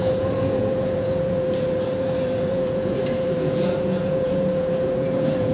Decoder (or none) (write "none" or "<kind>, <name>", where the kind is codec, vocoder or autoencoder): vocoder, Vocos